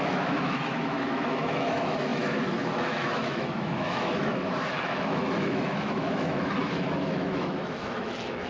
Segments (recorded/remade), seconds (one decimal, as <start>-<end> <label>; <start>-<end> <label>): 0.0-8.5 remade